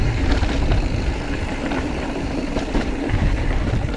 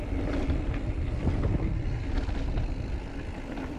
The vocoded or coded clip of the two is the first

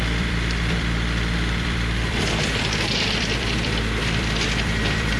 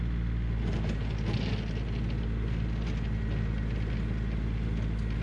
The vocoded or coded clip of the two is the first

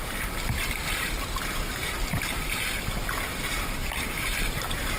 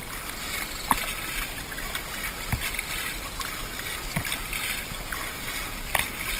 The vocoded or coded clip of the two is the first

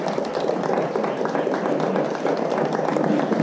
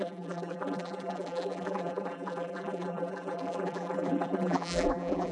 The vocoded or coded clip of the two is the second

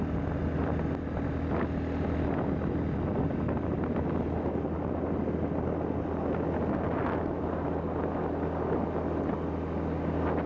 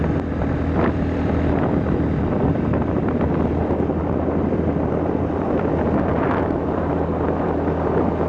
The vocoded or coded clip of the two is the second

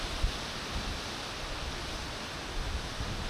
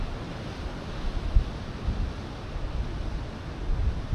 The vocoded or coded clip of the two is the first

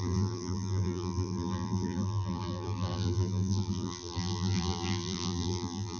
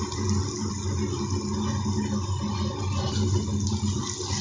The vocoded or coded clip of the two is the first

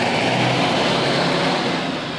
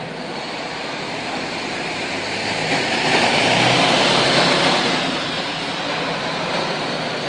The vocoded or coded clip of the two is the second